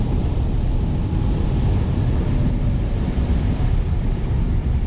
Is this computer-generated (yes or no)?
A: yes